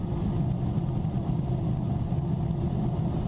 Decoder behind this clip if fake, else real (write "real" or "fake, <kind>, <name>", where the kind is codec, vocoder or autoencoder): real